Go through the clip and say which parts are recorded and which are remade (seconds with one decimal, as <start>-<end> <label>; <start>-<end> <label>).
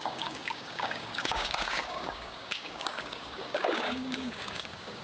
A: 0.0-5.0 remade